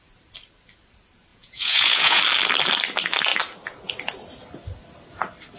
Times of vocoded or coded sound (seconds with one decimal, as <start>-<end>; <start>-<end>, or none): 1.3-2.2